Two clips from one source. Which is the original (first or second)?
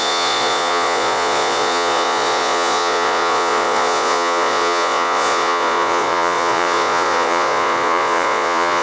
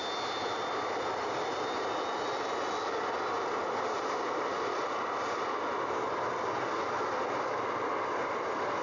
second